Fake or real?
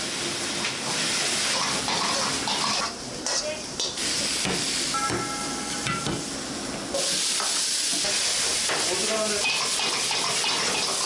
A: real